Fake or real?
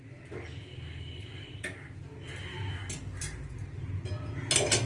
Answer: real